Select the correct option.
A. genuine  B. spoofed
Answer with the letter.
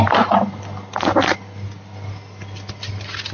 A